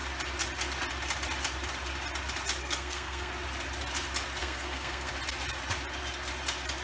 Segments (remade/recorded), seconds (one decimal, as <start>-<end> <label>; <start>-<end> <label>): 0.0-2.6 recorded; 2.6-3.3 remade; 3.3-4.4 recorded; 4.4-5.1 remade; 5.1-6.8 recorded

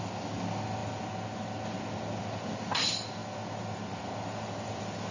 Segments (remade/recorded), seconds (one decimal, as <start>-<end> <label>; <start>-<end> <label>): 0.0-5.1 recorded

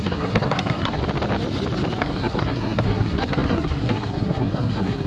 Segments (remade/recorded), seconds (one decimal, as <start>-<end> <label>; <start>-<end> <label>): 0.0-1.0 remade; 1.0-2.0 recorded; 2.0-5.1 remade

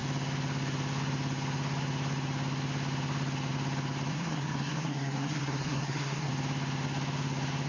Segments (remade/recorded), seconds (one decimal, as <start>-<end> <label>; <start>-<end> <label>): 0.0-4.1 recorded; 4.1-6.3 remade; 6.3-7.7 recorded